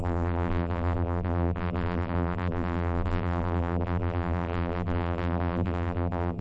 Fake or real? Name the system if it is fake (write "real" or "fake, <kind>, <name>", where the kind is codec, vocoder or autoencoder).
fake, vocoder, BigVGAN v2